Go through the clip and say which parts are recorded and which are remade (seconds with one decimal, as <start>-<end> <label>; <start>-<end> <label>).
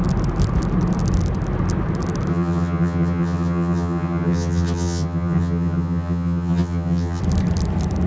0.0-2.3 recorded; 2.3-7.2 remade; 7.2-8.1 recorded